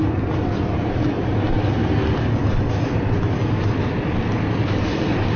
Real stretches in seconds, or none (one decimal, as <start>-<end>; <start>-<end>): 1.8-5.0